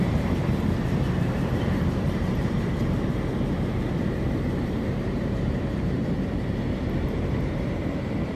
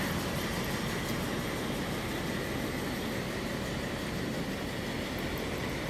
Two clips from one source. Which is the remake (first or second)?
first